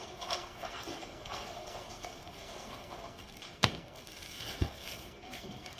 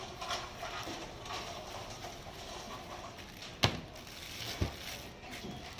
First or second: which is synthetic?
first